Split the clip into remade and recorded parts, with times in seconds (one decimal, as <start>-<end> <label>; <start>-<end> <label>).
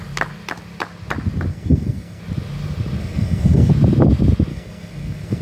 0.0-1.5 recorded; 1.5-2.2 remade; 2.2-3.0 recorded; 3.0-3.7 remade; 3.7-4.5 recorded; 4.5-5.4 remade